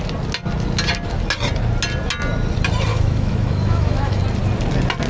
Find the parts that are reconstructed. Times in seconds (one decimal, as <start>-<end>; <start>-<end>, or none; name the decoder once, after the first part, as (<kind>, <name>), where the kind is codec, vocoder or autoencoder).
2.9-4.2 (autoencoder, DAC-VAE)